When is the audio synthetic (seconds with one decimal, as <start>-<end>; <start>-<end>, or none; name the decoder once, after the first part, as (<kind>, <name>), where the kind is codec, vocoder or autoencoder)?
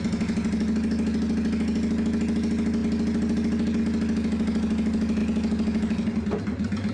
none